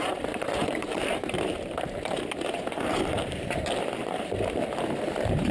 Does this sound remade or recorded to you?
remade